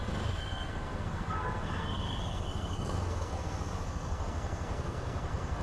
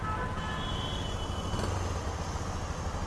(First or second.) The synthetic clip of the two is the first